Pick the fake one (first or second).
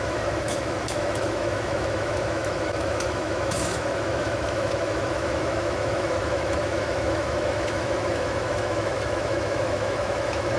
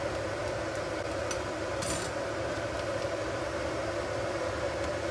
first